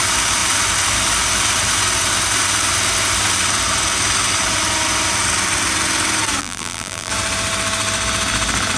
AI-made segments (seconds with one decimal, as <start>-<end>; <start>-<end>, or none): 6.4-7.1